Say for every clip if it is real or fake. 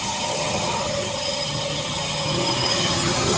fake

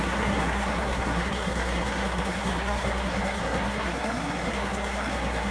fake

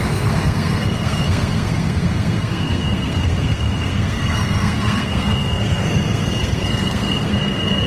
fake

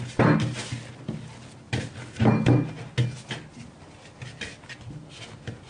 real